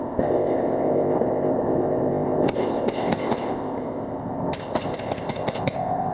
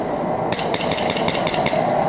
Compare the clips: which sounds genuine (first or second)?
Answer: second